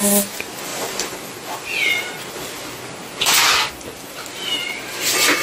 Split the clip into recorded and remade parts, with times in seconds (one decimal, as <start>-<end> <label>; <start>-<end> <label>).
0.0-5.4 recorded